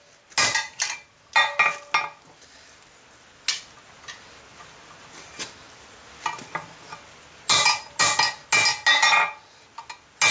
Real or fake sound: real